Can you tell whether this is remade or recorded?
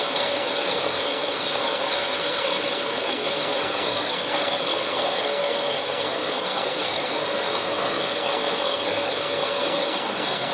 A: remade